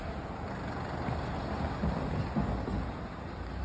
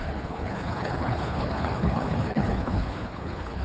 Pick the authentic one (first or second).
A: first